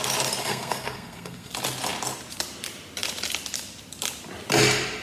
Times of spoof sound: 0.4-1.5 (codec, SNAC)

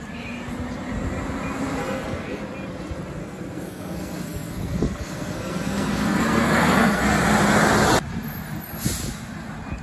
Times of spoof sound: 1.8-2.4 (codec, SNAC); 3.2-7.2

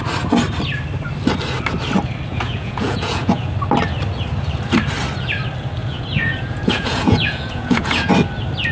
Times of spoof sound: 2.3-3.5 (vocoder, Vocos); 5.8-8.1

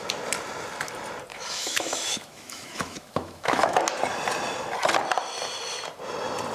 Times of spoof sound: 1.3-3.8 (autoencoder, DAC-VAE)

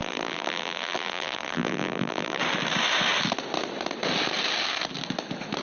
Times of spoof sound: 0.0-2.4 (vocoder, BigVGAN v2)

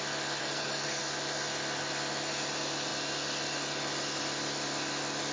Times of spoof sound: 0.4-1.0 (codec, SNAC)